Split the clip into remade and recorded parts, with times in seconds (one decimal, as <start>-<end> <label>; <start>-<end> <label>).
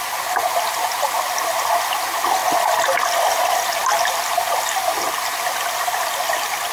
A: 0.0-0.6 remade; 0.6-6.7 recorded